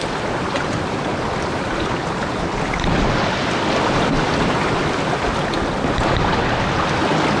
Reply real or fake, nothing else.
real